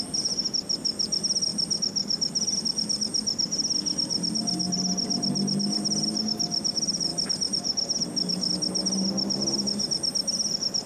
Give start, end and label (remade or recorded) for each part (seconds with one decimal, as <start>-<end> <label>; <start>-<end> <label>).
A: 0.0-10.9 recorded